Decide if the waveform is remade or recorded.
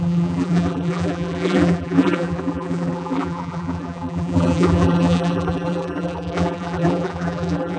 remade